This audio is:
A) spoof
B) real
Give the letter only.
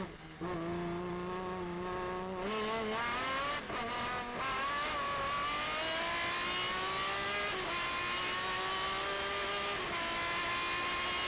B